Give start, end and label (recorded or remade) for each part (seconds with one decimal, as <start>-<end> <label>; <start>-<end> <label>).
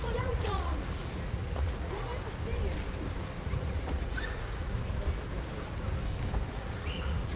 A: 0.0-2.1 remade; 2.1-3.4 recorded; 3.4-4.8 remade; 4.8-6.5 recorded; 6.5-7.4 remade